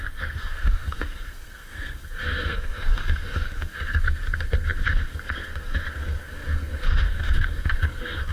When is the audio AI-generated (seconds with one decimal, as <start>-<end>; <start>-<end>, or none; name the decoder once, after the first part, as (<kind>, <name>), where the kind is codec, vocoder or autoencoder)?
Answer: 0.0-8.3 (codec, SNAC)

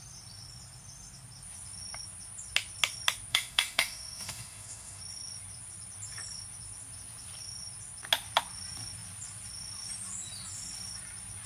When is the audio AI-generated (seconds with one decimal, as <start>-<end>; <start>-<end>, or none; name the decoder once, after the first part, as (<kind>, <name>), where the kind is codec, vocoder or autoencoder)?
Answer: 3.3-5.0 (autoencoder, DAC-VAE)

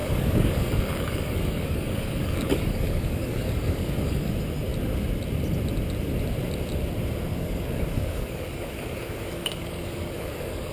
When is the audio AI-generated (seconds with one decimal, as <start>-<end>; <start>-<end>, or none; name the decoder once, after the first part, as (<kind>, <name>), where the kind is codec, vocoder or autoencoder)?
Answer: 0.0-4.3 (codec, DAC); 7.3-10.7

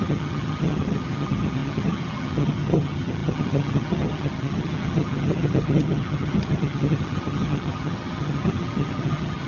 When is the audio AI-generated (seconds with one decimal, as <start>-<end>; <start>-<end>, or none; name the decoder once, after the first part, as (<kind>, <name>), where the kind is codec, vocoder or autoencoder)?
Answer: 0.0-9.5 (vocoder, HiFi-GAN)

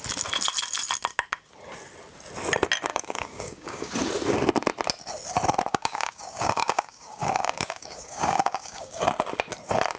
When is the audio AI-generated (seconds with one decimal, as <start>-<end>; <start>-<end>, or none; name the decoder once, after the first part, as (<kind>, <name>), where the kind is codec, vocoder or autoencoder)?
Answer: 2.9-3.9 (codec, DAC); 5.7-9.1

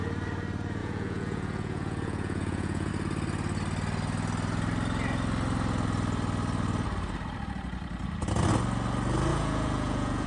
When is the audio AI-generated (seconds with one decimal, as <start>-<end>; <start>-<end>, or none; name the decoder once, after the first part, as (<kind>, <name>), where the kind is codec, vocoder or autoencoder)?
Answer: 0.8-2.9 (vocoder, Vocos); 9.3-10.3

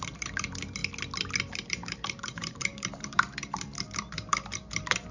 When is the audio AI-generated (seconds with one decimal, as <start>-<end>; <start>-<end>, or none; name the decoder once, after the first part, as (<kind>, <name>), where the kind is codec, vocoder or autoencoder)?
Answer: 0.0-0.8 (vocoder, BigVGAN v2); 1.7-5.1

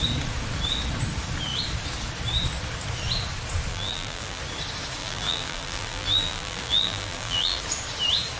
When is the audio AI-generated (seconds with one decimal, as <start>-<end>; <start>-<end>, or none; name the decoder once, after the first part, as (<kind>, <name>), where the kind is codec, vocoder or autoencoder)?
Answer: 3.7-4.4 (vocoder, BigVGAN v2); 5.0-7.6